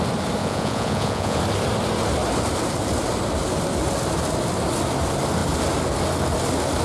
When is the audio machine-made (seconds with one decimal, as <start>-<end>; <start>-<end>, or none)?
0.4-1.4